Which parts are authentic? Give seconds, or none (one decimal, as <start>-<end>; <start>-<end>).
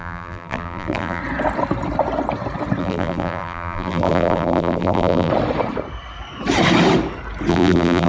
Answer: 1.2-2.8; 5.3-7.5